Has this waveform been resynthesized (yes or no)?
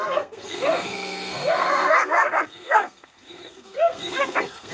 yes